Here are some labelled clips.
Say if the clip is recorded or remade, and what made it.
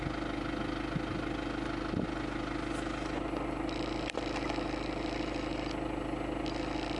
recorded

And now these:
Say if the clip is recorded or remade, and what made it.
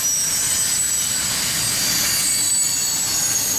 recorded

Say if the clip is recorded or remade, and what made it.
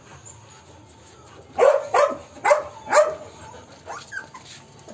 recorded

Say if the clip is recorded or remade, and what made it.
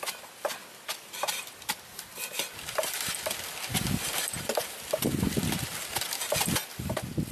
recorded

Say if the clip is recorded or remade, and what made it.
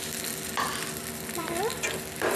recorded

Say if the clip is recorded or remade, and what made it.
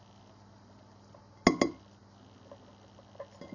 recorded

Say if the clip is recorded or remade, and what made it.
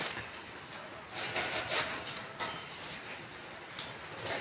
recorded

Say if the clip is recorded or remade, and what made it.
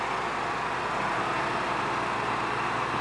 recorded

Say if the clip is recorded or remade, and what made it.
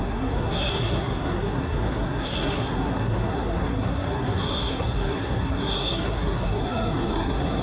remade, codec, SNAC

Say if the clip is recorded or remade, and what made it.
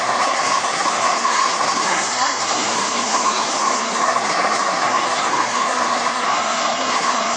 remade, codec, SNAC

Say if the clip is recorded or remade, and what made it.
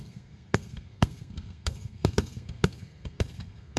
remade, codec, SNAC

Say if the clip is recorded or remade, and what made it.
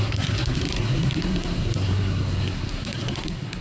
remade, codec, SNAC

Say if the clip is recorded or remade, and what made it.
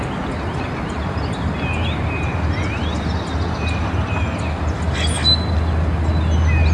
recorded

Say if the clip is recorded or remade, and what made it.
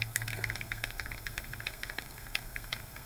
remade, codec, SNAC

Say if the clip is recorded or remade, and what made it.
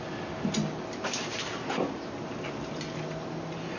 recorded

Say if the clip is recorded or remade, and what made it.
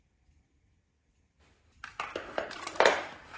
recorded